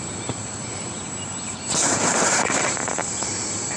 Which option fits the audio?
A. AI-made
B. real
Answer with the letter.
A